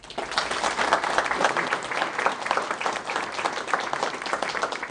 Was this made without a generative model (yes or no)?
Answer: yes